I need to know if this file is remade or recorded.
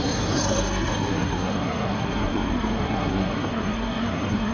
remade